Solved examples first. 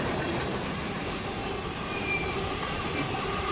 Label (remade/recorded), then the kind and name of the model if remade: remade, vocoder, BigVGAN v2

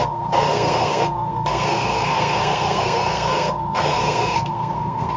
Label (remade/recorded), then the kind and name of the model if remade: remade, codec, SNAC